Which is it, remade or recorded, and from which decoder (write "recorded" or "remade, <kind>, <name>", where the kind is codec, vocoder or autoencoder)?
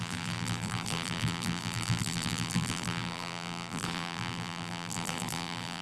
remade, vocoder, BigVGAN v2